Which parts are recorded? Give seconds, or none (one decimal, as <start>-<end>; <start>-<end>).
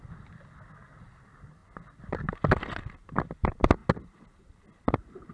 0.0-5.3